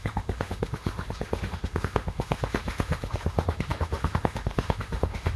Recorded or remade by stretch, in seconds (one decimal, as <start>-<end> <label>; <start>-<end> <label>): 0.0-5.4 remade